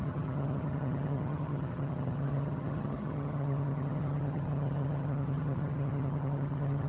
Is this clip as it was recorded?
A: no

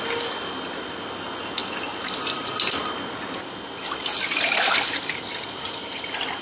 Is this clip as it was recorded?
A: yes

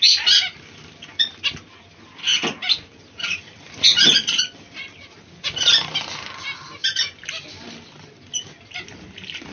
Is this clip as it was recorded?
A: yes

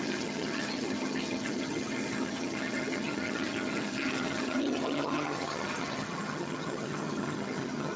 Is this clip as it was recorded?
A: no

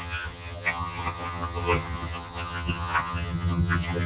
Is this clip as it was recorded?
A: no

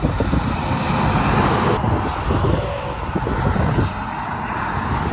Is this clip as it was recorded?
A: yes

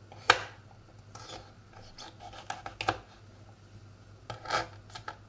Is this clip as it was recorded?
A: yes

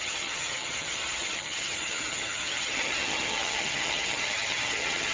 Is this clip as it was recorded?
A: no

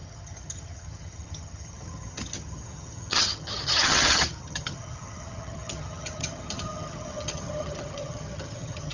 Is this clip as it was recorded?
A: no